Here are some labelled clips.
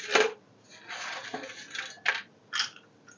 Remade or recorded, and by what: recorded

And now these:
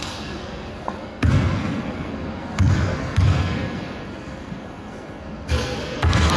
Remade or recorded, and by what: remade, codec, SNAC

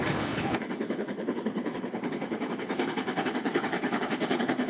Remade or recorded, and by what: remade, codec, HILCodec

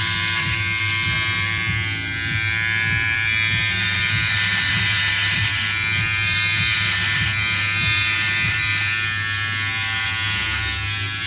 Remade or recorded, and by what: recorded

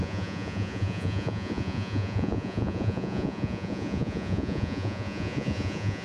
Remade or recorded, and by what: remade, vocoder, Vocos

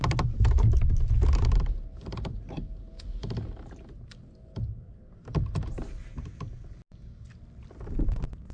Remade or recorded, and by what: recorded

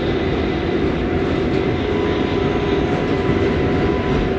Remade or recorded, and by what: recorded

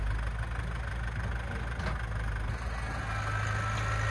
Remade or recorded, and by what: recorded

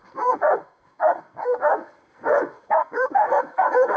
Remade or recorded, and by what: remade, codec, SNAC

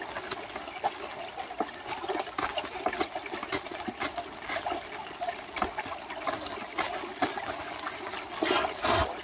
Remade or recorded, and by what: recorded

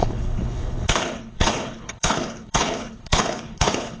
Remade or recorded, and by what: remade, codec, HILCodec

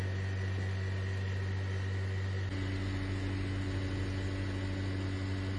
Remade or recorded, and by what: recorded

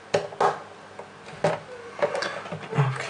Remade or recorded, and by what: recorded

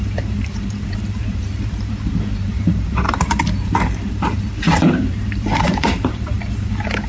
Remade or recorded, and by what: remade, vocoder, BigVGAN v2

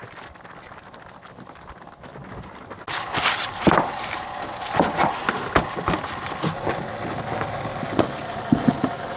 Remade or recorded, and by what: recorded